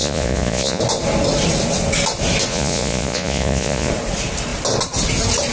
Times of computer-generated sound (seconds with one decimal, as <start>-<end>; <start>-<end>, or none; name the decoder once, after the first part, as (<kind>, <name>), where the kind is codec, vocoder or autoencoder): 0.0-0.8 (vocoder, Vocos); 2.5-3.9